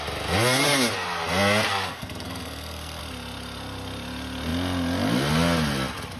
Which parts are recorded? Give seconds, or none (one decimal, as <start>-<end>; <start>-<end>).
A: 0.0-1.7; 3.0-6.2